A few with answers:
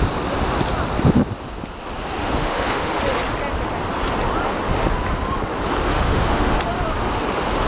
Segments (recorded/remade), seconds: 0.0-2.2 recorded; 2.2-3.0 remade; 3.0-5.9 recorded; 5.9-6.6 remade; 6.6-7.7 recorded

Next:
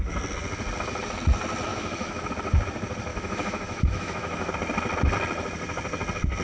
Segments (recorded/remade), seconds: 0.0-1.7 recorded; 1.7-2.3 remade; 2.3-3.1 recorded; 3.1-4.5 remade; 4.5-6.4 recorded

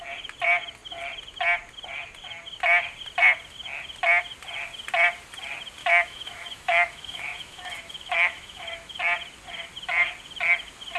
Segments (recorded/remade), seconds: 0.0-5.8 recorded; 5.8-9.0 remade; 9.0-11.0 recorded